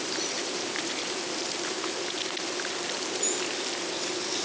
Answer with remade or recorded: recorded